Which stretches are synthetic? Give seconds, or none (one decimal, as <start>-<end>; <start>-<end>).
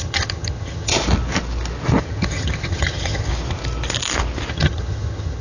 0.0-0.9; 2.0-3.3; 4.5-5.4